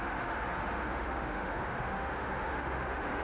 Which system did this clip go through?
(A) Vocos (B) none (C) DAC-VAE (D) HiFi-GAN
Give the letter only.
C